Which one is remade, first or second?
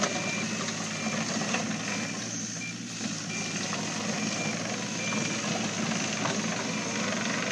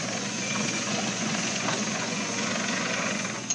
second